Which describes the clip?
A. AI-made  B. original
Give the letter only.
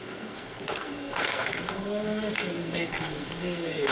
A